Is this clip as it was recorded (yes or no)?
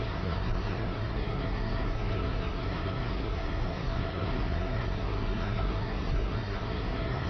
no